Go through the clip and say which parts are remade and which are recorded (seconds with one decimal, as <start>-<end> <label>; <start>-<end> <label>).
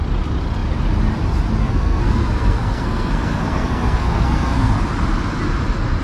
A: 0.0-1.6 recorded; 1.6-4.7 remade; 4.7-6.0 recorded